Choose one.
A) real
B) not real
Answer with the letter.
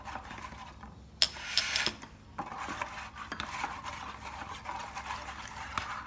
A